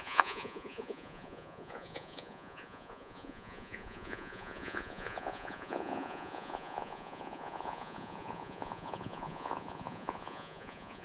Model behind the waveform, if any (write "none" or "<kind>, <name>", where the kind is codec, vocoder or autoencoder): vocoder, Vocos